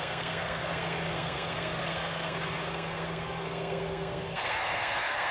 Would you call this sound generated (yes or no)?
yes